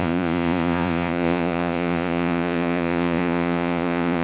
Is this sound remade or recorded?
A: remade